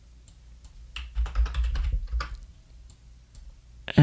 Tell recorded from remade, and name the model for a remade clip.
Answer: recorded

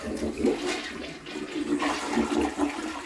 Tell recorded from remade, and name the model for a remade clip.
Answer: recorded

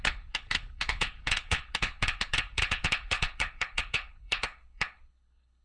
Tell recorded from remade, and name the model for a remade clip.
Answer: remade, codec, HILCodec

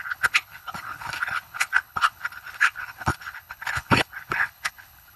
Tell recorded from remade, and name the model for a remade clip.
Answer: remade, codec, HILCodec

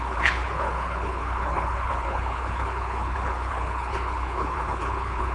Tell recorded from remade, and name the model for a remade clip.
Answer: remade, codec, HILCodec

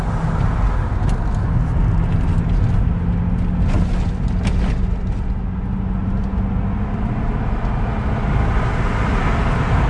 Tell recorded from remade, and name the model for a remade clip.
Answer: recorded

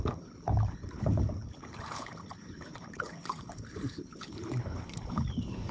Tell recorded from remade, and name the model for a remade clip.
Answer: remade, codec, HILCodec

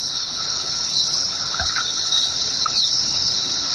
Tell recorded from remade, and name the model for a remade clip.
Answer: remade, codec, HILCodec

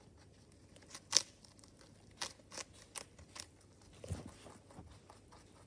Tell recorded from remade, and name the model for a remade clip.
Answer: recorded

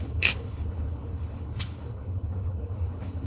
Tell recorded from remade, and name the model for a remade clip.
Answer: remade, codec, HILCodec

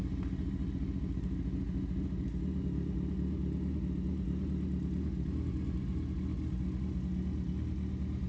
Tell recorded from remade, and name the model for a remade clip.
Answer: recorded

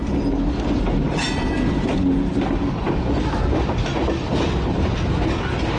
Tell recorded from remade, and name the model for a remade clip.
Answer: recorded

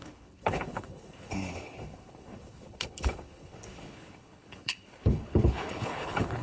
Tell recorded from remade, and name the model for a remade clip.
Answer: remade, codec, HILCodec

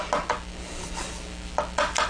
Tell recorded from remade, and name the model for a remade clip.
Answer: recorded